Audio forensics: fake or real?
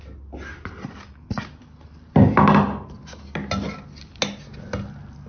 real